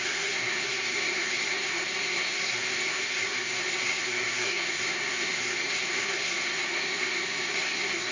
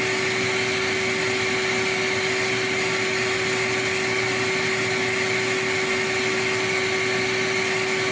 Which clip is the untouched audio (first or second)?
second